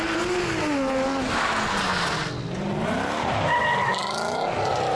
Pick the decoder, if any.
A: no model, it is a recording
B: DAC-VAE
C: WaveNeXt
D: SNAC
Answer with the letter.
A